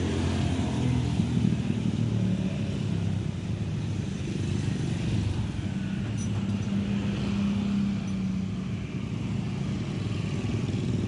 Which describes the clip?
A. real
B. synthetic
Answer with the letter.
A